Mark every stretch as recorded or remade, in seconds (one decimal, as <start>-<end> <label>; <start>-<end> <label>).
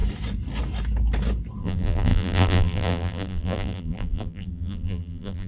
0.0-1.6 recorded; 1.6-5.5 remade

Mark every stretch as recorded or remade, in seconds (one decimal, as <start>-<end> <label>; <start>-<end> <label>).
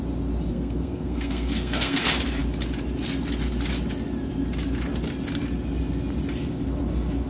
0.0-0.5 recorded; 0.5-2.0 remade; 2.0-7.3 recorded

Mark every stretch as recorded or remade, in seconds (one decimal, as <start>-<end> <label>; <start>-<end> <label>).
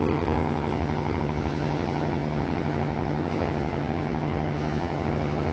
0.0-5.5 remade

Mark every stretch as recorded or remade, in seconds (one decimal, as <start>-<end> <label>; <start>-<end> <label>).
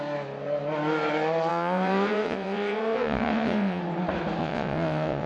0.0-1.5 recorded; 1.5-3.8 remade; 3.8-4.4 recorded; 4.4-5.3 remade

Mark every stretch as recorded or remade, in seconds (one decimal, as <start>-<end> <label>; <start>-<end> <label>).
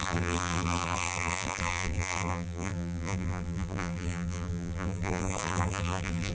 0.0-6.3 remade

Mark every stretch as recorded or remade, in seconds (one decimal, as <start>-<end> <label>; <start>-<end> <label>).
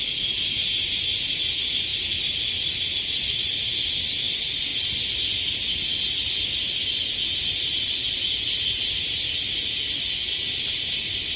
0.0-4.7 recorded; 4.7-5.5 remade; 5.5-11.4 recorded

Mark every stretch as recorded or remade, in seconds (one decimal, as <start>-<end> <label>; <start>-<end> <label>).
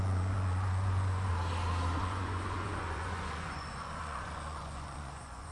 0.0-1.3 remade; 1.3-2.0 recorded; 2.0-5.5 remade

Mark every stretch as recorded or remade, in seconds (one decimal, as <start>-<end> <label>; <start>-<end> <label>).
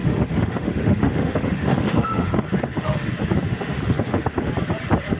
0.0-3.1 remade; 3.1-3.5 recorded; 3.5-4.5 remade; 4.5-5.2 recorded